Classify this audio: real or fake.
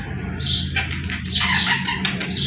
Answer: real